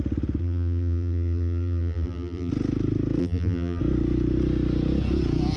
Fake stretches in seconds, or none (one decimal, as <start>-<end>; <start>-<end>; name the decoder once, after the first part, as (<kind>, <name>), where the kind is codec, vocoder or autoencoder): 0.4-2.5 (vocoder, BigVGAN v2); 3.2-3.8